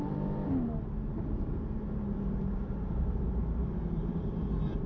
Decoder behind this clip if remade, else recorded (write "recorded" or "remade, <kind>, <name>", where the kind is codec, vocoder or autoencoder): remade, vocoder, BigVGAN v2